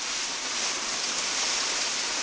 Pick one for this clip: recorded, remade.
recorded